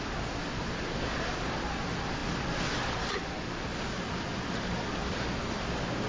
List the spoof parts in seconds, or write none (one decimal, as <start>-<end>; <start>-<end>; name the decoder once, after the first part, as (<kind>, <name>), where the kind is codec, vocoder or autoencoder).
none